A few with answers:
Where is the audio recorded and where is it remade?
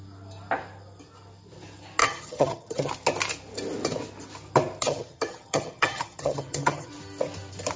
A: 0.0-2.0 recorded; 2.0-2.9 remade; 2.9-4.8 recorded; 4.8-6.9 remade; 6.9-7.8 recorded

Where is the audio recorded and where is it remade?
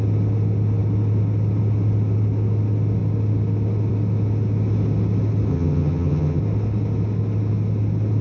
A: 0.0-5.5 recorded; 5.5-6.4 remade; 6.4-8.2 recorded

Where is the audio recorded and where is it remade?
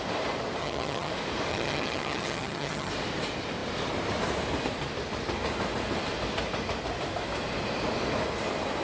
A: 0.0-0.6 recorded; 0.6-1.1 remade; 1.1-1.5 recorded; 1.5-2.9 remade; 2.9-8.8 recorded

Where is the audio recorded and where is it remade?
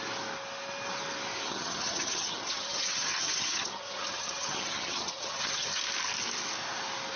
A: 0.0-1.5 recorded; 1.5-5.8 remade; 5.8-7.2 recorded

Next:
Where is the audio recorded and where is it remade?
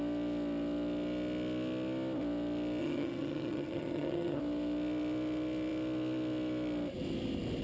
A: 0.0-2.8 recorded; 2.8-4.4 remade; 4.4-7.6 recorded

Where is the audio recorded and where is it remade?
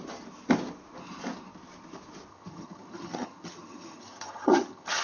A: 0.0-2.3 recorded; 2.3-5.0 remade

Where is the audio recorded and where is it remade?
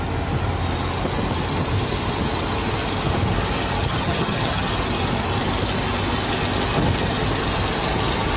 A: 0.0-3.9 recorded; 3.9-4.7 remade; 4.7-8.4 recorded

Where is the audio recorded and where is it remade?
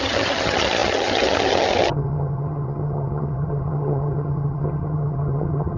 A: 0.0-5.8 remade